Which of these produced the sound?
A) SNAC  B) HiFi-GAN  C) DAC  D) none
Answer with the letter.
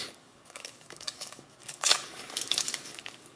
C